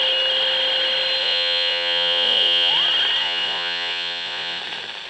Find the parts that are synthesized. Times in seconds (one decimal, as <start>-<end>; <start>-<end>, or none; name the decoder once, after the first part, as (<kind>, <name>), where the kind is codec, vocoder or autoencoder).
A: 1.2-2.7 (vocoder, Vocos); 3.2-4.6